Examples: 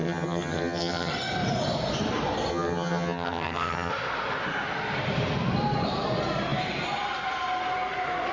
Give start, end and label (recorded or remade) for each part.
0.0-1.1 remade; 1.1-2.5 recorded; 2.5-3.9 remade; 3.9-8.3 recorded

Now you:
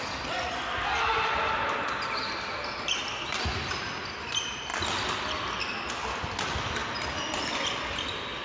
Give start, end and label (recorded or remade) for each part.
0.0-8.4 recorded

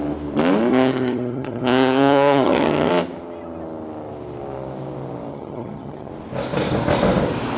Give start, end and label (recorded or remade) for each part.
0.0-0.7 recorded; 0.7-2.9 remade; 2.9-5.3 recorded; 5.3-6.1 remade; 6.1-7.6 recorded

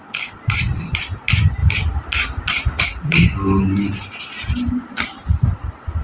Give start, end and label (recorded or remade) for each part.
0.0-6.0 recorded

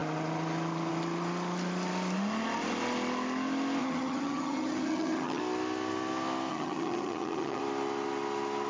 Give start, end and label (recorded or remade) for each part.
0.0-3.8 recorded; 3.8-5.4 remade; 5.4-6.5 recorded; 6.5-7.6 remade; 7.6-8.7 recorded

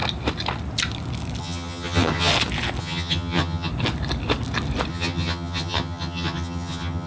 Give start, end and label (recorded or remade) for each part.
0.0-1.4 recorded; 1.4-2.3 remade; 2.3-2.8 recorded; 2.8-3.7 remade; 3.7-4.9 recorded; 4.9-7.1 remade

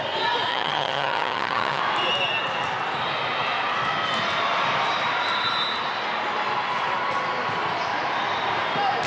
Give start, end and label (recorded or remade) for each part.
0.0-0.5 recorded; 0.5-1.8 remade; 1.8-9.1 recorded